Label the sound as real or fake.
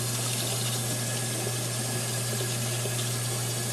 real